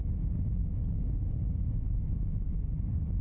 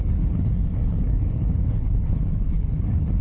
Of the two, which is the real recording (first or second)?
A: first